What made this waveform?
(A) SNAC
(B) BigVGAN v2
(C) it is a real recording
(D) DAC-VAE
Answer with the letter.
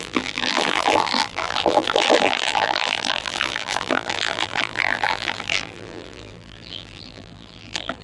B